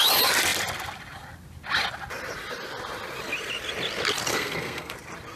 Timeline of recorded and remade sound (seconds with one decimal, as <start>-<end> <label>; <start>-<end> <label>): 0.0-4.3 recorded; 4.3-4.9 remade; 4.9-5.4 recorded